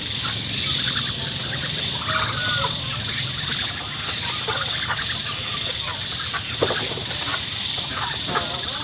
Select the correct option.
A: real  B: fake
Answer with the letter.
A